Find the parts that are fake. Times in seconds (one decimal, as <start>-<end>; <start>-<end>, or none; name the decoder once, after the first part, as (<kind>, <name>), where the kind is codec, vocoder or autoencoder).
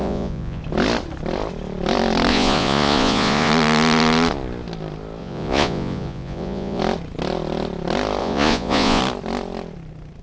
0.0-0.6 (vocoder, Vocos); 2.3-3.5; 5.2-6.8; 8.2-9.0